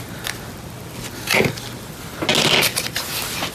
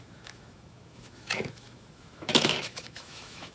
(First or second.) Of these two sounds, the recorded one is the first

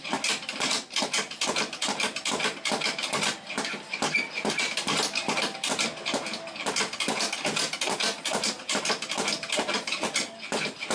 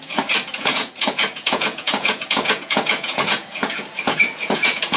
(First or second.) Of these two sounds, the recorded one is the first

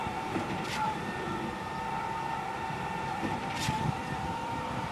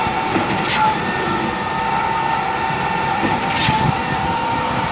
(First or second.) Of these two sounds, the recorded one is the second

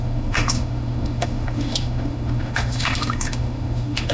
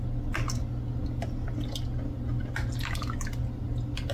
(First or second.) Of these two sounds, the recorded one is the second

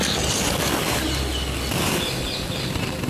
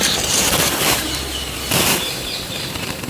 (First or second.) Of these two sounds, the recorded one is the first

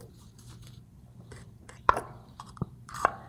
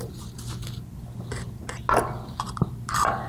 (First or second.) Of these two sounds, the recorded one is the second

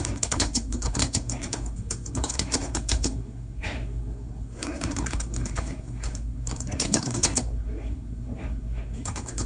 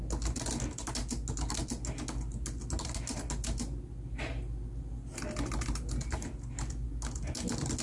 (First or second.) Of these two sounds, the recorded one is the second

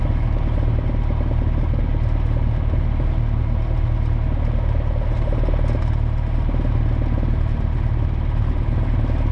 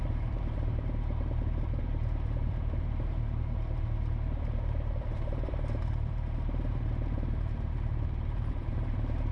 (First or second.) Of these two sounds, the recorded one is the first